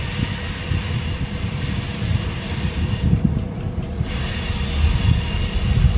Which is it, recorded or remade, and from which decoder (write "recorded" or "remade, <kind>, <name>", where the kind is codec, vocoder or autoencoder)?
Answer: recorded